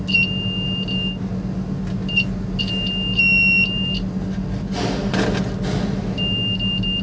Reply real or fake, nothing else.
real